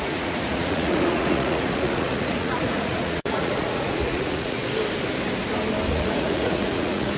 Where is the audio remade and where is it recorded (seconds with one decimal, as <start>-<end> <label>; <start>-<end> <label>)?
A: 0.0-4.6 remade; 4.6-5.9 recorded; 5.9-7.2 remade